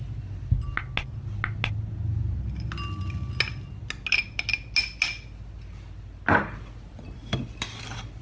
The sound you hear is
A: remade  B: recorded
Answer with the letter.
B